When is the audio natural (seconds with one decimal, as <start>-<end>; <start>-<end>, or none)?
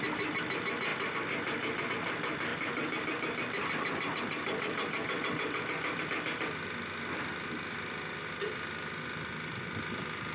0.0-10.3